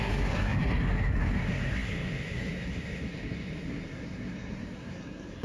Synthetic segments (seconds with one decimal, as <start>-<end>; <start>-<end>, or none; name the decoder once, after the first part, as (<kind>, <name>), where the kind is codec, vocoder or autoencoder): 0.0-5.4 (codec, SNAC)